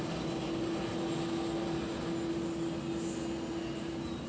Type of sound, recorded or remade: recorded